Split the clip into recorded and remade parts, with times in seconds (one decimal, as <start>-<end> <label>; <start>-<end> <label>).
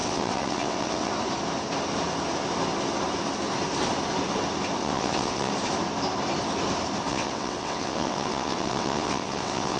0.0-1.1 remade; 1.1-4.8 recorded; 4.8-5.5 remade; 5.5-7.1 recorded; 7.1-9.8 remade